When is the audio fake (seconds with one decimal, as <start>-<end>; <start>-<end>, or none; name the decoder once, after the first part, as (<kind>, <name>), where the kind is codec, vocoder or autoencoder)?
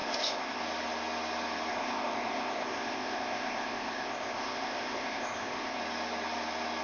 0.0-0.6 (codec, ZipCodec); 1.7-5.8